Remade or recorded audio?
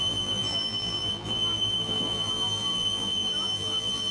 remade